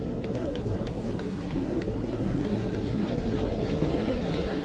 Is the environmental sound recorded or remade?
remade